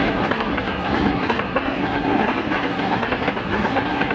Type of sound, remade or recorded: remade